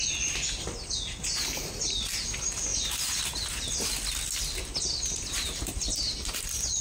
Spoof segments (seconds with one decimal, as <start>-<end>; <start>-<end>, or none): none